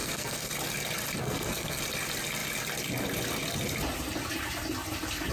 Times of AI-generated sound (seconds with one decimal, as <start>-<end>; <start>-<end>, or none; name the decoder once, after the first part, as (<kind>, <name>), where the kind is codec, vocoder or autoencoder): 0.0-0.5 (codec, SNAC); 1.2-1.8